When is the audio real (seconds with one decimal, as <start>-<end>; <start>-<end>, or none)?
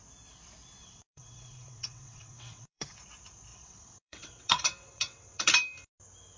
0.0-0.8; 3.0-3.5; 5.5-6.4